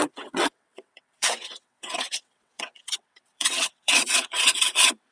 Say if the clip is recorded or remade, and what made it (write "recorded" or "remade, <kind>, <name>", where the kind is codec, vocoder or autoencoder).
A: remade, vocoder, WaveNeXt